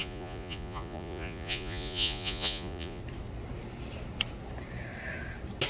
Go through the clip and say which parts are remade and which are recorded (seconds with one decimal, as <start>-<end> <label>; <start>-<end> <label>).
0.0-3.0 remade; 3.0-5.7 recorded